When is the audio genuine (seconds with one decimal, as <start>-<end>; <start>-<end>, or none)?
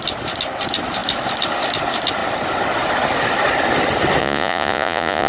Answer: 0.0-4.2